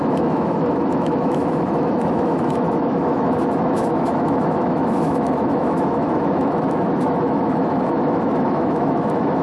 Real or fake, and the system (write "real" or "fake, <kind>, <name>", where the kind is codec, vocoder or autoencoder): fake, autoencoder, DAC-VAE